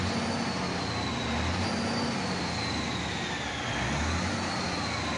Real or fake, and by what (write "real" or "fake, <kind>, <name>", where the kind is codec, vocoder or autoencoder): real